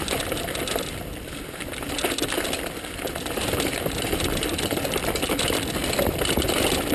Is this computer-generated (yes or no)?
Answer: no